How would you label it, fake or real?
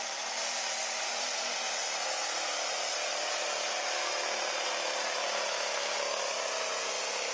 real